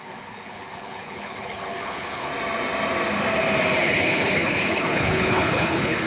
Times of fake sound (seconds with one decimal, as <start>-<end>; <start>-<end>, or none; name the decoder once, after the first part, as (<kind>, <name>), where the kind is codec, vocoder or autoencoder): 0.0-2.3 (codec, HILCodec); 3.8-6.1